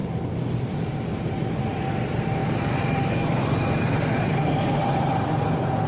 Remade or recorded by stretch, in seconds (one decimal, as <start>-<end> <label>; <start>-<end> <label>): 0.0-2.4 recorded; 2.4-5.3 remade; 5.3-5.9 recorded